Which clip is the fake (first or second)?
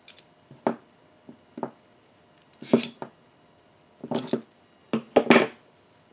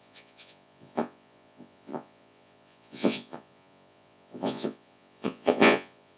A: second